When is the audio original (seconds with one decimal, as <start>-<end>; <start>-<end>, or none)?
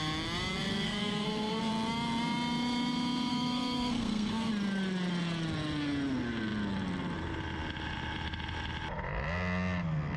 0.0-0.7; 1.7-3.3; 4.5-10.2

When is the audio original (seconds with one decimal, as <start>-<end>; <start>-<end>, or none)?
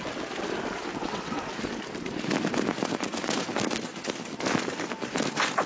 0.0-0.9; 1.5-5.7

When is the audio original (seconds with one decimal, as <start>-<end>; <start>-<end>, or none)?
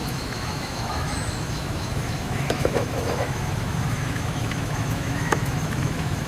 none